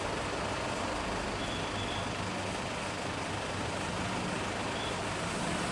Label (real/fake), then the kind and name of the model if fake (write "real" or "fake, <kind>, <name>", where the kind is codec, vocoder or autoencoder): real